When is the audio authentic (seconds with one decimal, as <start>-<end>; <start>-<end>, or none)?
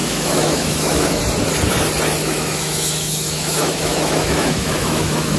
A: 1.2-2.2